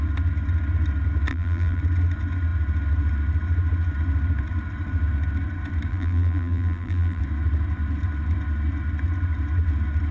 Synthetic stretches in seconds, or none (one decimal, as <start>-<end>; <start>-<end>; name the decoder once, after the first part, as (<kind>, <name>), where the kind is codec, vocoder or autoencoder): 1.3-1.8 (vocoder, BigVGAN v2); 5.9-7.2